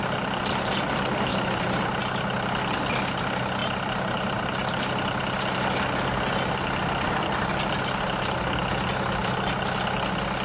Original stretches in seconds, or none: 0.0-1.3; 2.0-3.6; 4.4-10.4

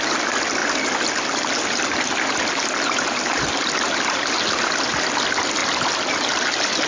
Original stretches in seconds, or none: 0.6-4.0; 5.6-6.3

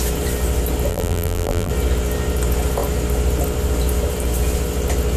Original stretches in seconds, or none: 0.0-0.9; 1.7-5.2

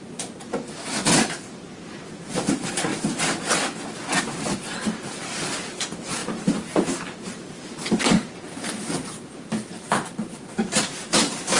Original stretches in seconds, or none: 2.9-4.2

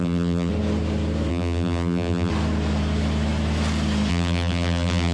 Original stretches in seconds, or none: 0.5-1.3; 2.3-4.1

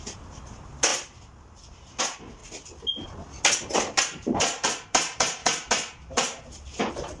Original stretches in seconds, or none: 2.4-4.0